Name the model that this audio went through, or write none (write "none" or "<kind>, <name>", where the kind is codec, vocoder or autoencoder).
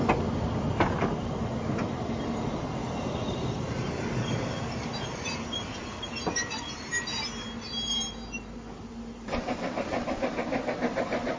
none